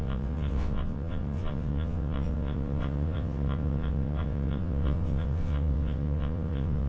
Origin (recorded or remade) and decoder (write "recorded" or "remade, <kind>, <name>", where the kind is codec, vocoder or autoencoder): remade, vocoder, WaveNeXt